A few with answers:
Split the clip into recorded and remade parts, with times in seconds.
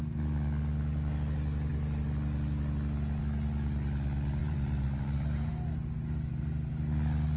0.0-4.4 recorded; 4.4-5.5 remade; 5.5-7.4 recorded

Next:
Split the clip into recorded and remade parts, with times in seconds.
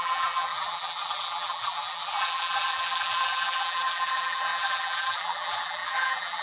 0.0-6.4 remade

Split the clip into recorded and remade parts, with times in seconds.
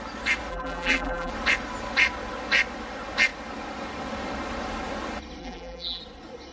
0.0-0.5 recorded; 0.5-1.3 remade; 1.3-5.4 recorded; 5.4-6.0 remade; 6.0-6.5 recorded